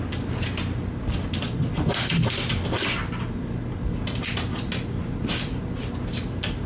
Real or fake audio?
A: real